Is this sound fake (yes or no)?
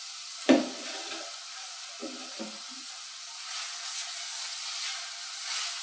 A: no